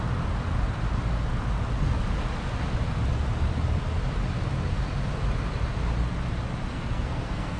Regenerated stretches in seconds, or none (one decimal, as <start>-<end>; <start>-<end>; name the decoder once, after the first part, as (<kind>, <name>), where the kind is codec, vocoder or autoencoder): 6.7-7.6 (codec, SNAC)

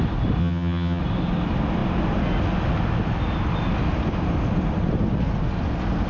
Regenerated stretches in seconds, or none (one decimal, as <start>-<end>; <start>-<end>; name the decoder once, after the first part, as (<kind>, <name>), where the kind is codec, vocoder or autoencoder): 0.4-1.0 (vocoder, HiFi-GAN)

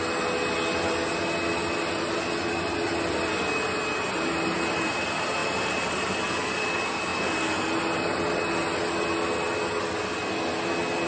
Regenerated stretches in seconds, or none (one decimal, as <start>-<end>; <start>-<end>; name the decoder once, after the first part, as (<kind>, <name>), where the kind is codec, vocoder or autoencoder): 5.4-6.1 (vocoder, BigVGAN v2)

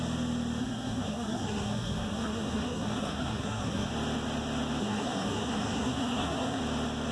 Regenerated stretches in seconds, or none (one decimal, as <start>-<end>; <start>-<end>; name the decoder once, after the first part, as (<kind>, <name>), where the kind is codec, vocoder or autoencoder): 0.6-3.9 (codec, SNAC); 4.8-6.6

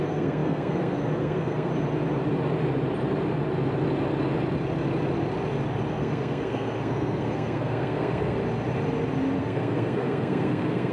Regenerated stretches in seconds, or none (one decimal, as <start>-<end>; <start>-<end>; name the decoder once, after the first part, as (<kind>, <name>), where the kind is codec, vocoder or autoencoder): 0.0-1.7 (codec, SNAC); 5.9-8.4; 9.4-10.9

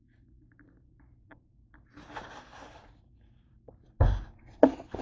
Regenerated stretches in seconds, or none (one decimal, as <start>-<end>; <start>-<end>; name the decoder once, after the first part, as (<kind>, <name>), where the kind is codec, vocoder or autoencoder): 0.0-1.9 (vocoder, BigVGAN v2); 2.7-3.8